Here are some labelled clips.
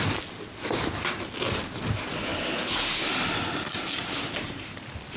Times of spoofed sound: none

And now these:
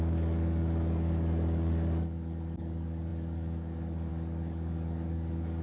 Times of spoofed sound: 0.0-5.6 (codec, DAC)

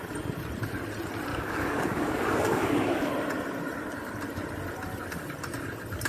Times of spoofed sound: 1.3-3.1 (codec, DAC)

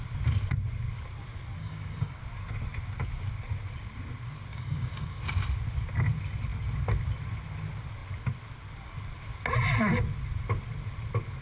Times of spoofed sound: 1.6-2.2 (codec, DAC); 4.5-5.2

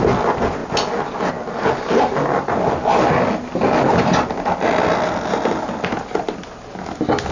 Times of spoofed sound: none

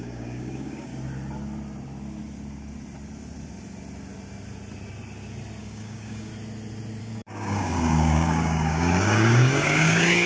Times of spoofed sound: 0.0-0.9 (codec, DAC); 5.6-6.3; 7.0-10.3

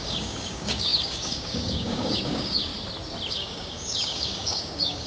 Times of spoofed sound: 0.0-2.7 (codec, DAC); 3.3-5.1